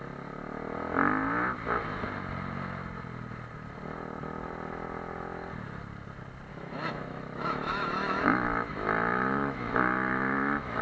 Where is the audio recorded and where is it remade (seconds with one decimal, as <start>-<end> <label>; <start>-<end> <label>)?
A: 0.0-6.5 recorded; 6.5-10.8 remade